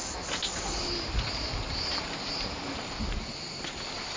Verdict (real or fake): real